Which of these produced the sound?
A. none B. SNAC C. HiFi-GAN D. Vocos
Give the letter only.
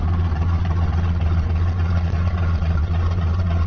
D